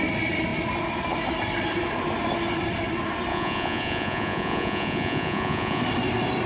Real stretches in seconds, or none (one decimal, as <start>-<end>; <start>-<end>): 0.0-3.3; 5.8-6.5